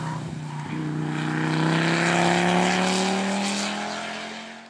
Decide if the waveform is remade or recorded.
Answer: recorded